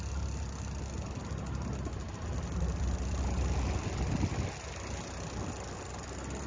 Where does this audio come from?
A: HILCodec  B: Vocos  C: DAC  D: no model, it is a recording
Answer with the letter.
D